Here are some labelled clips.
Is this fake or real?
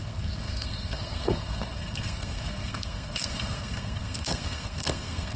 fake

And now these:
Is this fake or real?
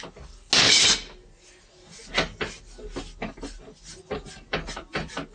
real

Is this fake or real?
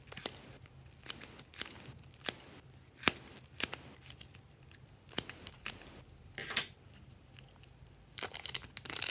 real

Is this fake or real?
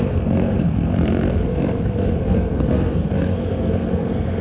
fake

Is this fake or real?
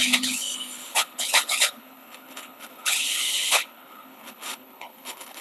fake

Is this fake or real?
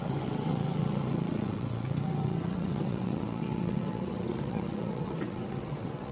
fake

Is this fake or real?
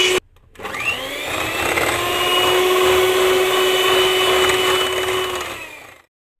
real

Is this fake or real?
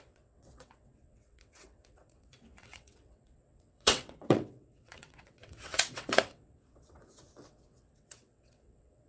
fake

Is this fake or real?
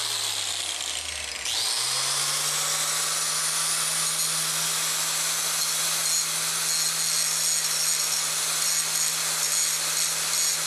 real